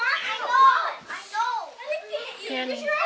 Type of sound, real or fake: real